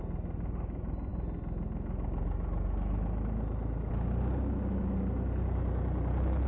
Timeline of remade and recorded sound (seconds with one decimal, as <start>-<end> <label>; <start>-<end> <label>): 0.0-6.5 recorded